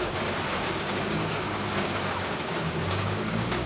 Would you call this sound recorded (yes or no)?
no